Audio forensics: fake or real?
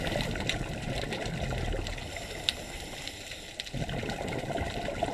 real